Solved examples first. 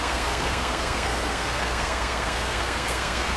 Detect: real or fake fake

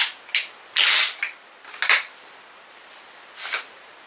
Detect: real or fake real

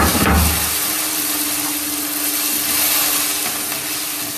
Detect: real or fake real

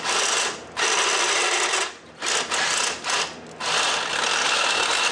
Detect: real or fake real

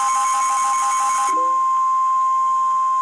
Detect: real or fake real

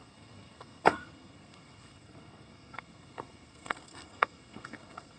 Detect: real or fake fake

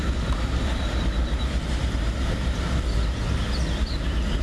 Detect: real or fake real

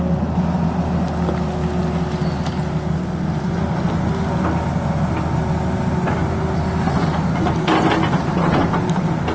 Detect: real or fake real